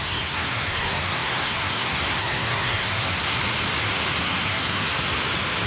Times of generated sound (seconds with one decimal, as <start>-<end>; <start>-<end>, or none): 0.0-3.4; 4.2-4.9